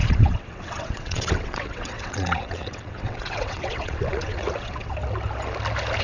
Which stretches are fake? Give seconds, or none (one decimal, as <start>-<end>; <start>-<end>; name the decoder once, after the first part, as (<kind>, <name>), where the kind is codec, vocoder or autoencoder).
0.0-5.0 (vocoder, WaveNeXt)